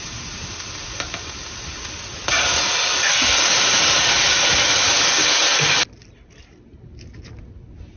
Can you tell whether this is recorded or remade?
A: recorded